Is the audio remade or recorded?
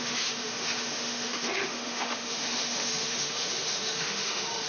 remade